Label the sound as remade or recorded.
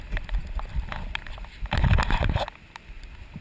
recorded